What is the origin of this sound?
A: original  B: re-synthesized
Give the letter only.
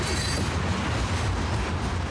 A